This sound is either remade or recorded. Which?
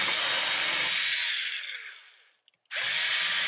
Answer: recorded